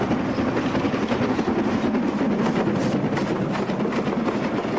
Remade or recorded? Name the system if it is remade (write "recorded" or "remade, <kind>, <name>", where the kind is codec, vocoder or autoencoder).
recorded